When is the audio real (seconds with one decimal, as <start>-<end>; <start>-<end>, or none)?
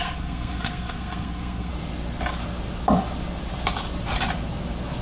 1.7-5.0